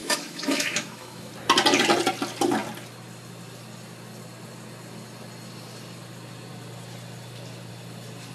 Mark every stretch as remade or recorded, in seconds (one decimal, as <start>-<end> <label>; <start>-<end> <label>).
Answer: 0.0-1.3 remade; 1.3-8.3 recorded